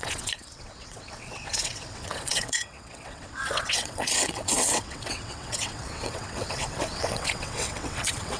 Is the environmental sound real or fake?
fake